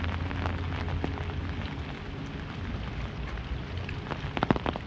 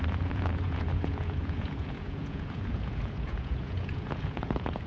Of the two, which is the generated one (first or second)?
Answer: second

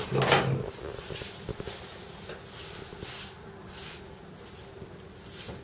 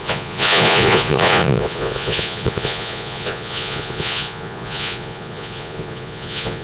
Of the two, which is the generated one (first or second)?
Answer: second